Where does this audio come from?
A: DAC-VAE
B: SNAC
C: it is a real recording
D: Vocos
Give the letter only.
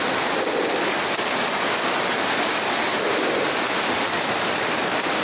C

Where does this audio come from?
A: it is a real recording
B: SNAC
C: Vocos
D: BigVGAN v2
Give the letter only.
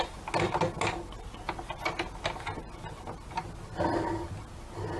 A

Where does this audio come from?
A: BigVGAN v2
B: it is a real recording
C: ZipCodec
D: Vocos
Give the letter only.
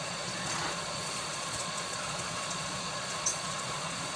D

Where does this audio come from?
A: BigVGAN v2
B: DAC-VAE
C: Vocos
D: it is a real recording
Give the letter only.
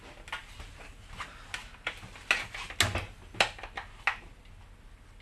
D